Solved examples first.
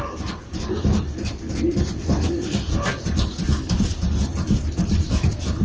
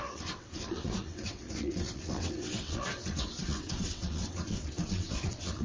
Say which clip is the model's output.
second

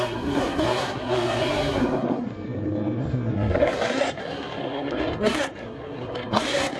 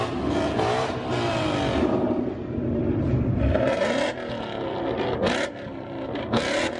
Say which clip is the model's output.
first